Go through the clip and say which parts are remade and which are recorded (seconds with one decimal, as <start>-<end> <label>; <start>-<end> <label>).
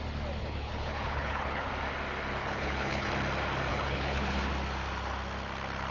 0.0-0.4 recorded; 0.4-1.7 remade; 1.7-2.4 recorded; 2.4-3.1 remade; 3.1-3.7 recorded; 3.7-4.5 remade; 4.5-5.9 recorded